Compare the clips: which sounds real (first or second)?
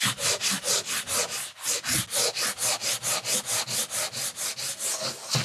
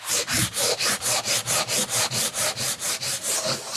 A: first